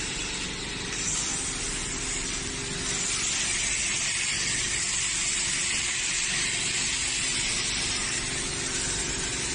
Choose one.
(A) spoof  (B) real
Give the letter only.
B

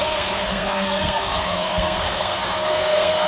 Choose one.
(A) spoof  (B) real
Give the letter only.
A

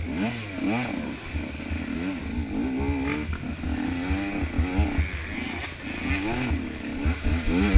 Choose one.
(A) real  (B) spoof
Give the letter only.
A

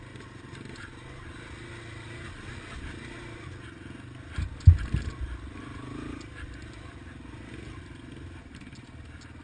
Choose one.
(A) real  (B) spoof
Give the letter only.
A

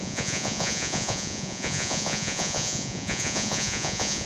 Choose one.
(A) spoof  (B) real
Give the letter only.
A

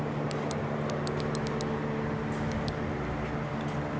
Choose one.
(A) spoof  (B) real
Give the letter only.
B